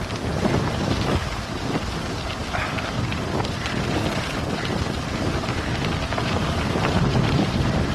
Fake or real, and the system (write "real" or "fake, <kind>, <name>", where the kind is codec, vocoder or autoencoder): fake, vocoder, BigVGAN v2